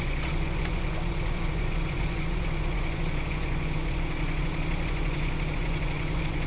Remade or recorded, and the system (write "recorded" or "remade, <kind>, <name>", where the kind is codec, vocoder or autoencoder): remade, vocoder, Vocos